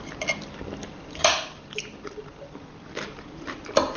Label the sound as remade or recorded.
recorded